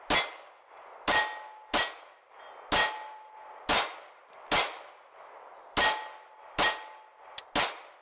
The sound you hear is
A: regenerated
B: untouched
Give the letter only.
B